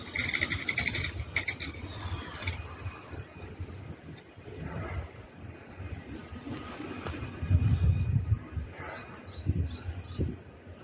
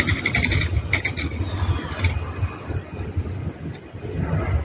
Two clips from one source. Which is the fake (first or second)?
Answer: first